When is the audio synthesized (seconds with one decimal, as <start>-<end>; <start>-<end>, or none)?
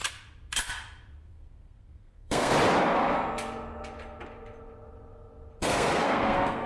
1.3-2.5; 5.6-6.7